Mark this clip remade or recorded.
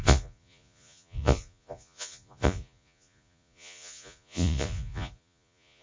remade